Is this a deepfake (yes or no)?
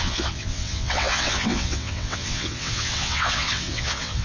yes